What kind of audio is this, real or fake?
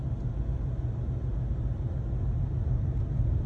real